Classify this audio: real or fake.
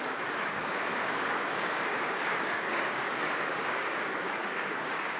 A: fake